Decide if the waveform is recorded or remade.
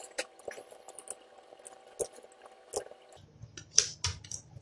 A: recorded